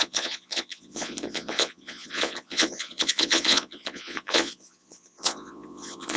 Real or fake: fake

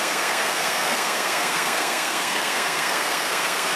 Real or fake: fake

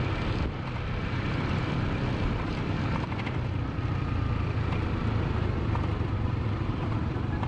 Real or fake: fake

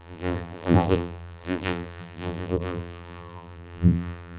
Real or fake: fake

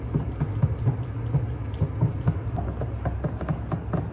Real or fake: real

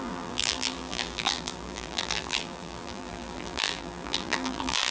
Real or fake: fake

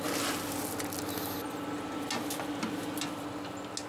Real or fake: real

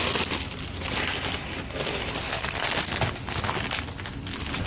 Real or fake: real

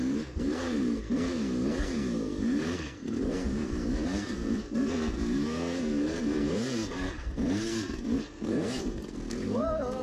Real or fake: fake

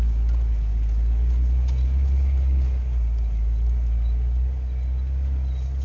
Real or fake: real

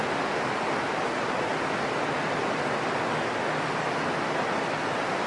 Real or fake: real